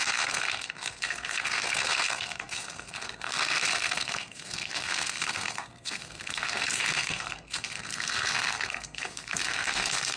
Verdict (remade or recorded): remade